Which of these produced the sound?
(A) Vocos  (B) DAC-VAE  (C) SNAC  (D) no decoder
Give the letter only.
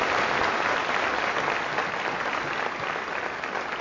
D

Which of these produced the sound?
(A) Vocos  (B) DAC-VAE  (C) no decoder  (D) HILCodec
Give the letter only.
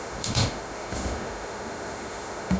B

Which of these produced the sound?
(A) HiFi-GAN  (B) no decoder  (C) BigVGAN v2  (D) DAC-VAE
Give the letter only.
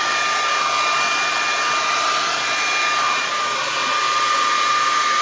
B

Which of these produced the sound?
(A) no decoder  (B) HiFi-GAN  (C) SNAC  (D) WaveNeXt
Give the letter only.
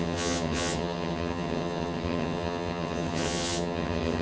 B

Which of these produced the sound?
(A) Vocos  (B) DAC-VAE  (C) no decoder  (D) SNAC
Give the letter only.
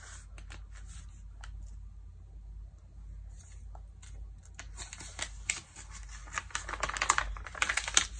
C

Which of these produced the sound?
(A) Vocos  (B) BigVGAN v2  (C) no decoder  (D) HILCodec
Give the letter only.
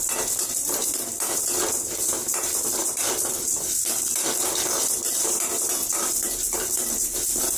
B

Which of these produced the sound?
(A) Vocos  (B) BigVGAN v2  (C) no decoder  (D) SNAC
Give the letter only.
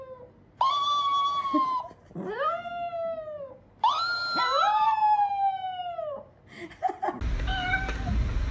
C